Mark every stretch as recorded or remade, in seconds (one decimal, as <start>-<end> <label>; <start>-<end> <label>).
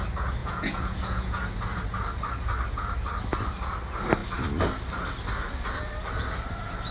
0.0-0.4 recorded; 0.4-1.4 remade; 1.4-6.9 recorded